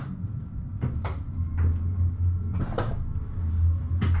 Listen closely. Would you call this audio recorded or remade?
recorded